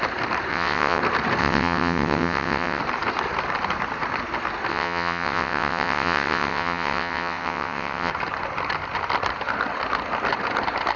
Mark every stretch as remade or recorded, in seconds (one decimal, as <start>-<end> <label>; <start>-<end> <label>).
0.0-0.5 recorded; 0.5-1.0 remade; 1.0-1.4 recorded; 1.4-2.8 remade; 2.8-4.7 recorded; 4.7-8.1 remade; 8.1-11.0 recorded